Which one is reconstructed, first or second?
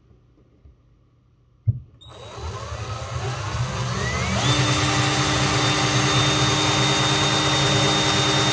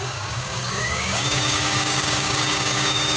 second